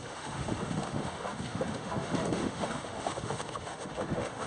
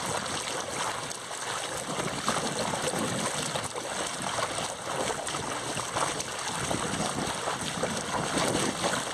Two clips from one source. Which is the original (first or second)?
second